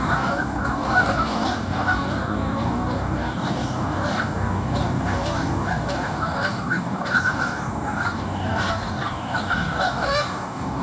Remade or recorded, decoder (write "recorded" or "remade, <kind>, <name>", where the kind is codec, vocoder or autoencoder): remade, codec, DAC